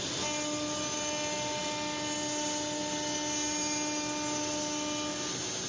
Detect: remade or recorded recorded